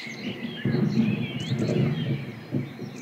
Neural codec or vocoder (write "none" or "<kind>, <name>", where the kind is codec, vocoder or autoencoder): none